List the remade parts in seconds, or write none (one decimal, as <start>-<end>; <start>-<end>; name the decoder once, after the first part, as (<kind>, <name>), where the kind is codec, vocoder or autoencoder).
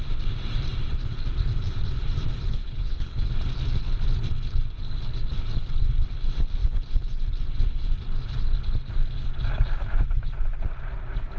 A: 2.6-3.3 (codec, HILCodec)